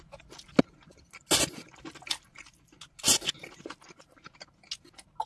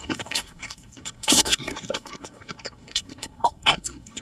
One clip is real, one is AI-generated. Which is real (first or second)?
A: first